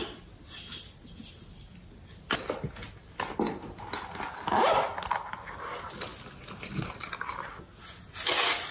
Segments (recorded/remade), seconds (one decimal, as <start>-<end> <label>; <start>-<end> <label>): 0.0-8.7 recorded